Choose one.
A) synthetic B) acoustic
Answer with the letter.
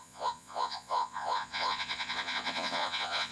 A